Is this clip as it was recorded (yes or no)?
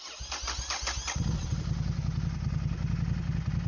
yes